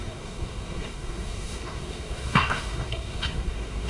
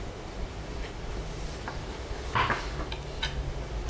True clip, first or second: second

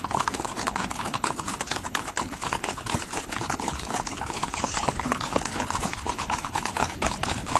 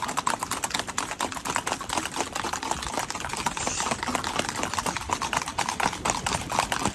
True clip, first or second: second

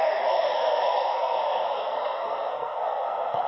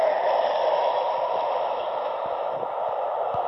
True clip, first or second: second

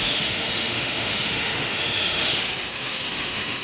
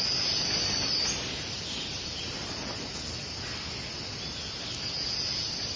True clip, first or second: second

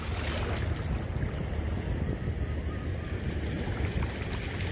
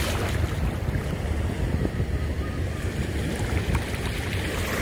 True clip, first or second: first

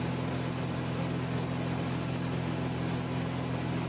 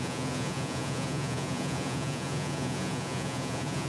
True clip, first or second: first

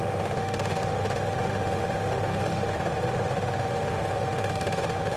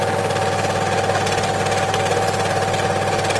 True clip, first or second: second